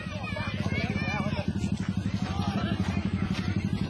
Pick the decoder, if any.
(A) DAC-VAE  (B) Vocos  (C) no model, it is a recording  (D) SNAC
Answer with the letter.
C